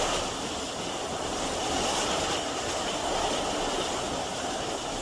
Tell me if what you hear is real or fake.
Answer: real